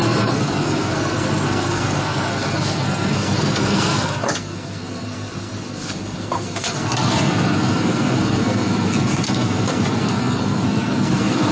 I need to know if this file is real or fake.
fake